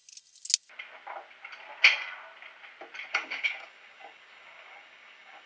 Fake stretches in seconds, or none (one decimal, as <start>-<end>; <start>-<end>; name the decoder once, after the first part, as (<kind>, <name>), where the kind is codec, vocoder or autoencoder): 3.1-5.5 (codec, DAC)